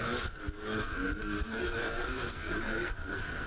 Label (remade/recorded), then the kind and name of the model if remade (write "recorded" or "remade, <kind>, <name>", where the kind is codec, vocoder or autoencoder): remade, codec, SNAC